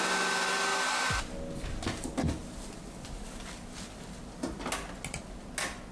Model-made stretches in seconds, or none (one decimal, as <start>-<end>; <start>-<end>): none